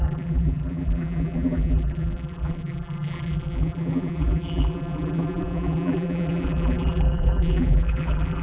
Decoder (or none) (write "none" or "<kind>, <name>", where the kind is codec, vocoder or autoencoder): vocoder, BigVGAN v2